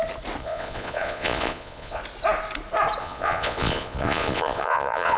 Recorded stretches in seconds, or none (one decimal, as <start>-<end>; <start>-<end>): 0.0-0.4; 2.0-3.0